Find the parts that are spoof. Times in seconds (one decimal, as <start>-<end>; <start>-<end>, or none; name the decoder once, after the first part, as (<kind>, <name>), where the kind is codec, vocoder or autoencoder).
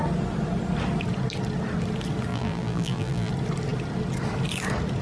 2.3-3.3 (vocoder, BigVGAN v2)